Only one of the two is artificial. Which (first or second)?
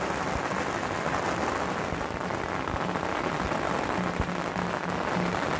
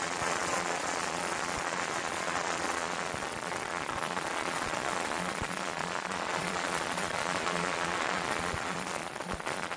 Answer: second